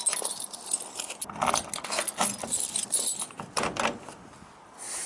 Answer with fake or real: real